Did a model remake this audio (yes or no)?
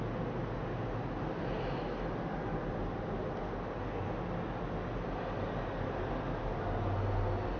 no